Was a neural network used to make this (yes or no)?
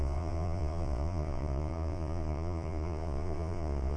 yes